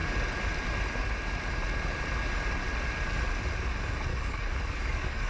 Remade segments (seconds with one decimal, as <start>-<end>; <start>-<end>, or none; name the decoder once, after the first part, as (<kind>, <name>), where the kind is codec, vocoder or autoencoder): 4.1-5.3 (codec, DAC)